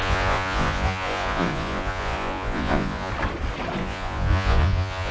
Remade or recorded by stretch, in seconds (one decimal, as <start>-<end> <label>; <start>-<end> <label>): 0.0-3.1 remade; 3.1-3.8 recorded; 3.8-5.1 remade